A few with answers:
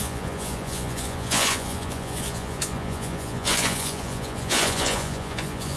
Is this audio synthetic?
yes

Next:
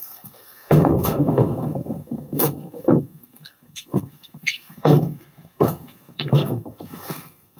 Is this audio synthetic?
yes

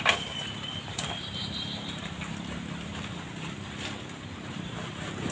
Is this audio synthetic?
no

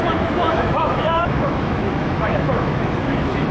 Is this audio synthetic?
yes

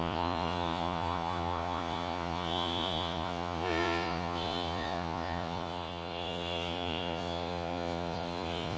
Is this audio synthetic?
yes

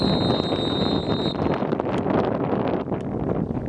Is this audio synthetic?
no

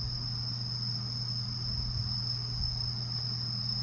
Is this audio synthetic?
no